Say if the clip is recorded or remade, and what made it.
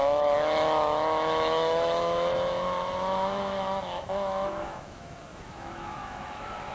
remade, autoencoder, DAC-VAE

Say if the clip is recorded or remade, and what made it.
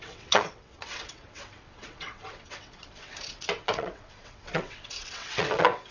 remade, vocoder, WaveNeXt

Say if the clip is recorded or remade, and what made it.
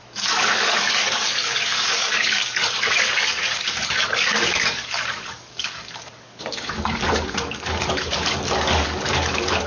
remade, codec, DAC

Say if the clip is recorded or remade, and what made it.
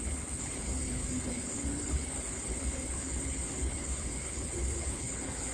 remade, codec, HILCodec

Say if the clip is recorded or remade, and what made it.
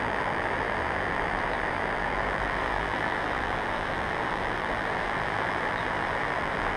remade, vocoder, BigVGAN v2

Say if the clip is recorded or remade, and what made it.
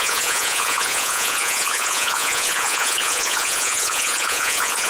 remade, vocoder, Vocos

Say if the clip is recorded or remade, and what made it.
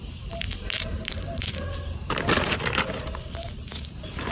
remade, vocoder, BigVGAN v2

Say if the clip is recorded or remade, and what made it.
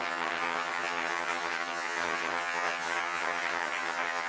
remade, vocoder, HiFi-GAN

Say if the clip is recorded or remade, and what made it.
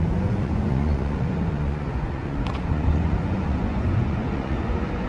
remade, vocoder, Vocos